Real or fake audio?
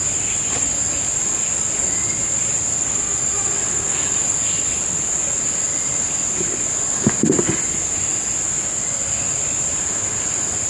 real